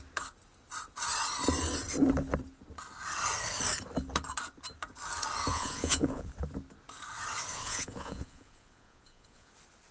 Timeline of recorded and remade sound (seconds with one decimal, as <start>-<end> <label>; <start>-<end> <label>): 0.0-5.5 recorded; 5.5-6.3 remade; 6.3-7.5 recorded; 7.5-9.5 remade; 9.5-9.9 recorded